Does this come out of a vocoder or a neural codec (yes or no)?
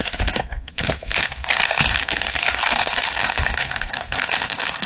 yes